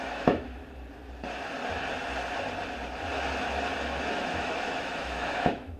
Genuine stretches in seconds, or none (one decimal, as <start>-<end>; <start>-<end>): 0.6-4.1